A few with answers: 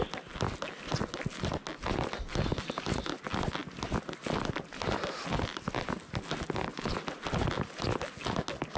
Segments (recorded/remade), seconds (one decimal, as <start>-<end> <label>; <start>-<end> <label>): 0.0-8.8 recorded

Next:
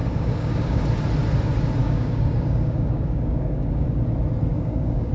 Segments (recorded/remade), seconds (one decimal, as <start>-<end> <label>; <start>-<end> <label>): 0.0-0.8 remade; 0.8-1.8 recorded; 1.8-3.9 remade; 3.9-4.5 recorded; 4.5-5.1 remade

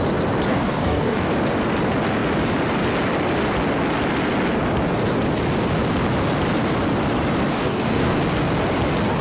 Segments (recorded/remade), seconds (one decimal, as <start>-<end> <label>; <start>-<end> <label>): 0.0-0.5 recorded; 0.5-1.3 remade; 1.3-7.5 recorded; 7.5-8.2 remade; 8.2-9.2 recorded

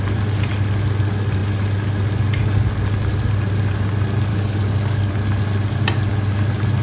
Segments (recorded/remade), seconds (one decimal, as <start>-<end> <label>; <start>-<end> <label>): 0.0-4.3 recorded; 4.3-5.1 remade; 5.1-6.8 recorded

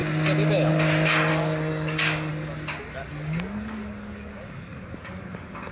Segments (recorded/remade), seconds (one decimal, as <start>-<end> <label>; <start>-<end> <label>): 0.0-1.3 recorded; 1.3-2.3 remade; 2.3-3.0 recorded; 3.0-5.7 remade